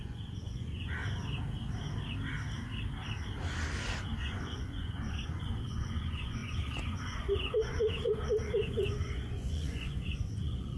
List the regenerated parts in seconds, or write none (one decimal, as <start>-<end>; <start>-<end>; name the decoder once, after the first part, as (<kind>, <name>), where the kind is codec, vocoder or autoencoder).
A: 0.0-1.0 (vocoder, Vocos); 4.2-10.8